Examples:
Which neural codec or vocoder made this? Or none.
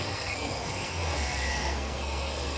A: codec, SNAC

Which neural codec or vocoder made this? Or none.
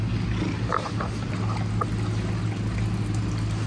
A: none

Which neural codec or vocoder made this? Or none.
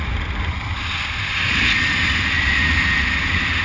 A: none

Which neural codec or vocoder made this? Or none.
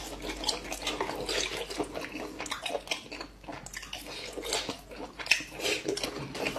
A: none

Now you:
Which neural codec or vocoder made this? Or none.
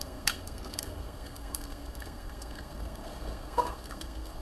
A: codec, SNAC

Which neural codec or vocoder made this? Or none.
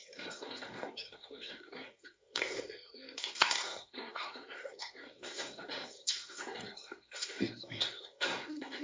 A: codec, SNAC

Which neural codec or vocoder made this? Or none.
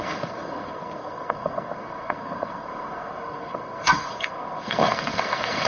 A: codec, SNAC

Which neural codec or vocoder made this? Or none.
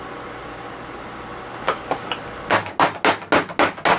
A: none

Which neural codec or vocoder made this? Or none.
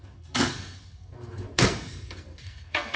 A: codec, SNAC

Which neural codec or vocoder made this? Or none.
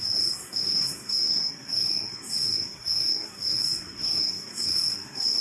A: codec, SNAC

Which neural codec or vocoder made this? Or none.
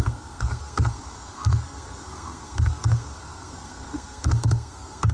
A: codec, SNAC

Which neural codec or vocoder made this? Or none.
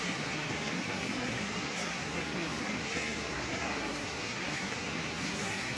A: codec, SNAC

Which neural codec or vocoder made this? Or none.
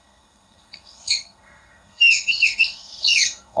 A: codec, SNAC